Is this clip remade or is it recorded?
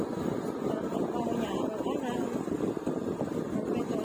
recorded